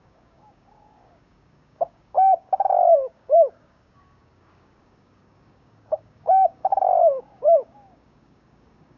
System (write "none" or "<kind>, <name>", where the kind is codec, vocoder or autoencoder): codec, DAC